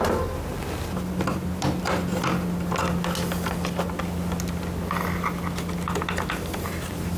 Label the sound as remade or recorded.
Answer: recorded